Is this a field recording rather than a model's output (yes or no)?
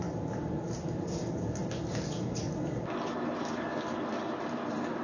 yes